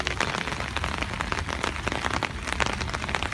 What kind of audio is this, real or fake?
real